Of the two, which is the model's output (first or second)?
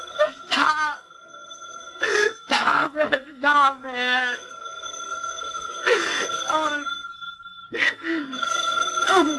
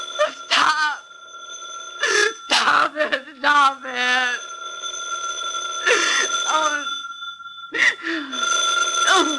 first